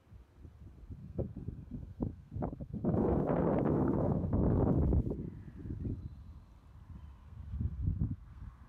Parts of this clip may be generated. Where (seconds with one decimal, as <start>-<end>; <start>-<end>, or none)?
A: 1.0-4.6; 7.2-8.7